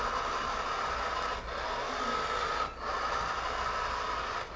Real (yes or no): yes